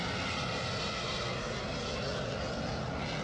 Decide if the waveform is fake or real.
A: real